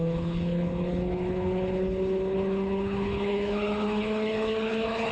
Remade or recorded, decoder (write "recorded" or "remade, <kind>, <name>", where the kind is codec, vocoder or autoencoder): remade, codec, HILCodec